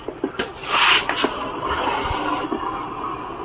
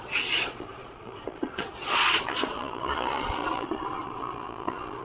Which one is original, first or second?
first